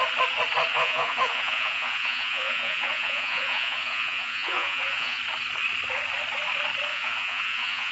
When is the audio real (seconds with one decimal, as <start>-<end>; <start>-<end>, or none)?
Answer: 0.0-0.7; 5.2-6.9